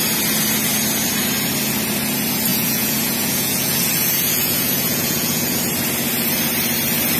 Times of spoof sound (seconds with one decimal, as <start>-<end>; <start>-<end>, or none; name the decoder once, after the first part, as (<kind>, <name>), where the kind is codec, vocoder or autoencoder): 2.5-5.6 (vocoder, Vocos)